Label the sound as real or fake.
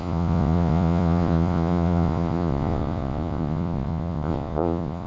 fake